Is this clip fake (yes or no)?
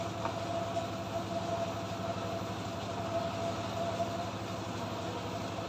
no